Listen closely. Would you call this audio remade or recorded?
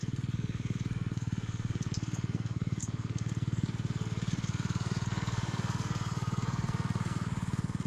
remade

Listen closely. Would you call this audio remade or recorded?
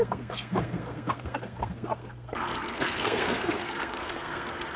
remade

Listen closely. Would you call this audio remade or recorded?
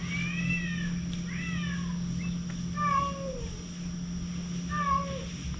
recorded